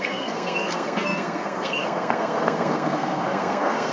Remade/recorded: remade